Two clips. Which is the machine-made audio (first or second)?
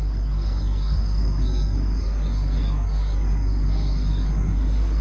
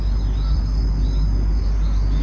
first